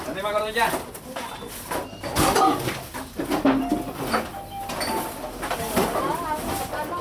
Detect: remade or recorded recorded